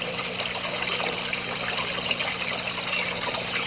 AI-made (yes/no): no